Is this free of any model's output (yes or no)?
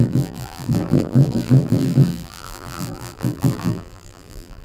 no